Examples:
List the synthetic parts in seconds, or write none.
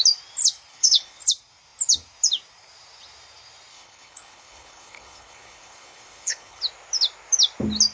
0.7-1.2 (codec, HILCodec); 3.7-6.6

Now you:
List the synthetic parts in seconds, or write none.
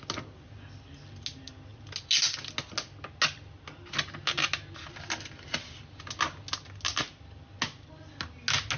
none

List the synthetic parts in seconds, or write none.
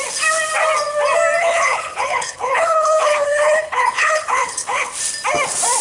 1.4-4.9 (codec, HILCodec)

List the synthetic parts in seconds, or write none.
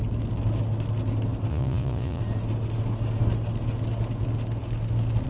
1.5-2.2 (vocoder, Vocos)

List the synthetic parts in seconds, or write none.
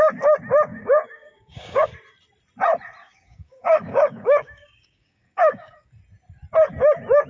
0.7-1.9 (codec, DAC); 3.0-5.9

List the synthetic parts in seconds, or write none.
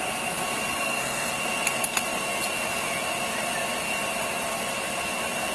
0.7-1.3 (codec, SNAC)